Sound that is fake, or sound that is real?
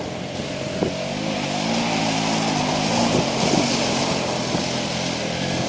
real